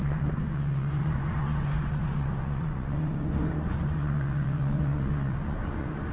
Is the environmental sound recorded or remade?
remade